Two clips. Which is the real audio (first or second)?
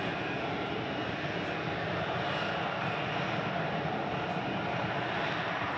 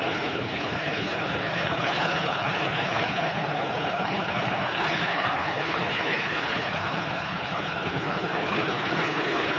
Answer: first